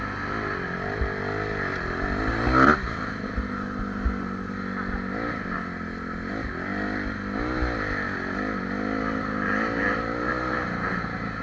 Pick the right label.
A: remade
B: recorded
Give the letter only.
B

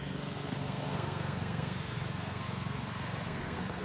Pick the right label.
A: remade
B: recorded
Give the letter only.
A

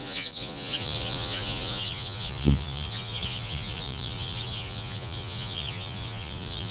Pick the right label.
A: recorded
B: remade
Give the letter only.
B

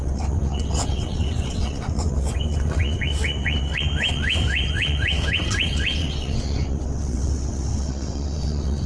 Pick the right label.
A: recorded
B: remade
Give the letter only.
B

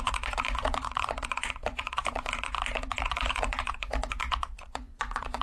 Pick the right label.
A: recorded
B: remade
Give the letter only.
B